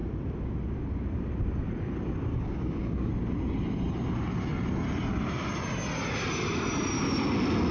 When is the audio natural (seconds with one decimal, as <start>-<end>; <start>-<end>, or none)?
0.0-2.3; 3.1-7.7